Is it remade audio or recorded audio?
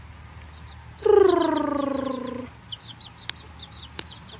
recorded